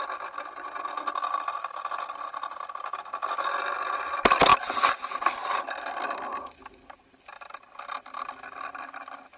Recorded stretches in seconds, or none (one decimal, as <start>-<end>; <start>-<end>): 0.0-9.4